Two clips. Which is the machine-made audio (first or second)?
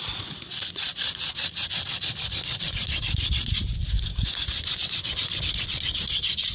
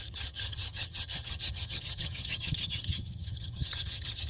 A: second